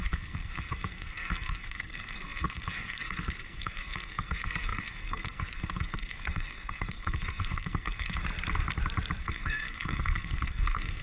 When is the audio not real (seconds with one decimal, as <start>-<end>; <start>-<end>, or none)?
0.0-8.2; 9.2-11.0